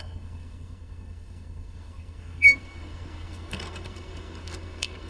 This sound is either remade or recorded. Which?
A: remade